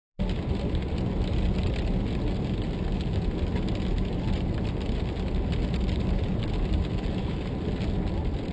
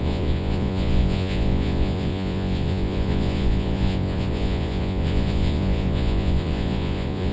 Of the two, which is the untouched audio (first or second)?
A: first